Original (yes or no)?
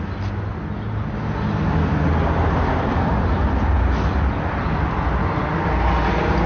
yes